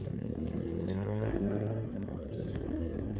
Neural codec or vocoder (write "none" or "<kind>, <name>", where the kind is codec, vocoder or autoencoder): codec, SNAC